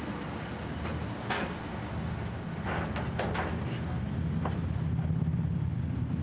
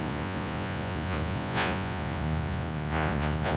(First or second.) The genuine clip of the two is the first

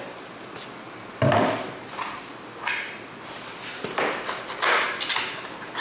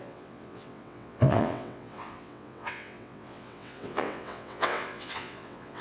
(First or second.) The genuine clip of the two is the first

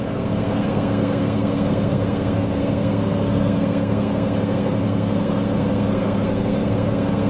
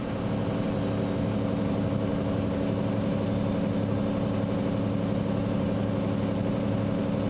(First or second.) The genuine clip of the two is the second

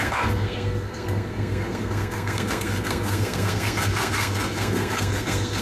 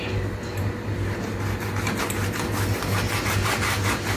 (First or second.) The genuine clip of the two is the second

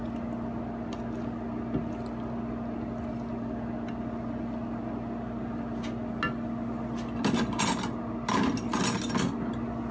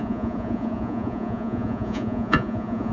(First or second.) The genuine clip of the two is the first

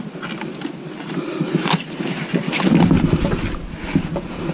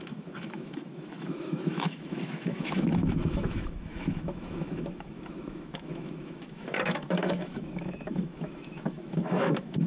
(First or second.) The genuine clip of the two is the first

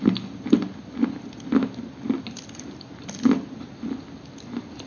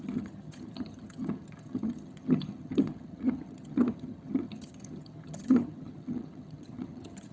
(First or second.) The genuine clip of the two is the first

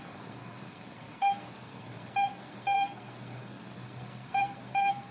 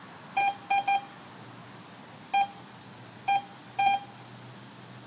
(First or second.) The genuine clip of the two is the second